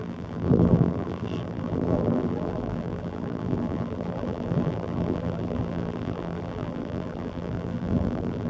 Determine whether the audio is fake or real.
fake